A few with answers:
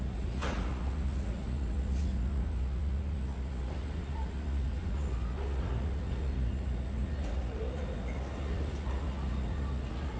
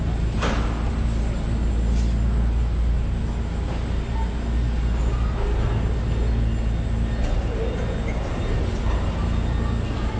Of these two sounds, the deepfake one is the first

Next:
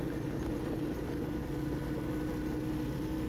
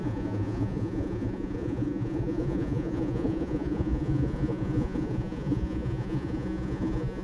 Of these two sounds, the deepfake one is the second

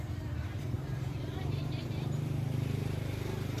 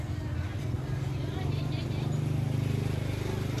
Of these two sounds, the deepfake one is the first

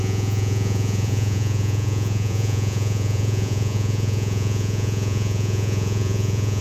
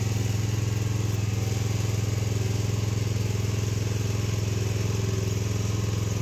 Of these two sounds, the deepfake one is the first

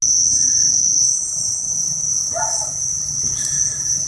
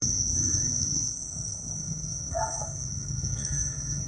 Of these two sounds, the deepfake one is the second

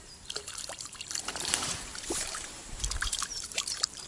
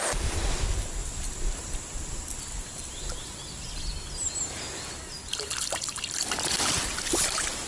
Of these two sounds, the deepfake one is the first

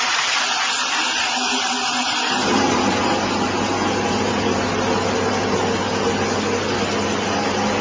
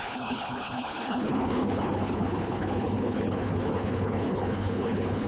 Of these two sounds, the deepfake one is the second